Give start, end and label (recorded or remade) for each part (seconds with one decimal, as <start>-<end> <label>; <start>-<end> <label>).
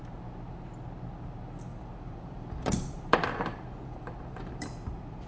0.0-1.7 recorded; 1.7-5.3 remade